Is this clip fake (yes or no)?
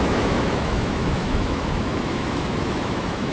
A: yes